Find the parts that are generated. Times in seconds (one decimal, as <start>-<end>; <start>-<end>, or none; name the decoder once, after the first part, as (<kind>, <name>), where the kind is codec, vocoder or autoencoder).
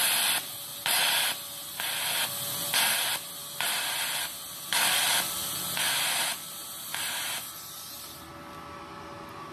none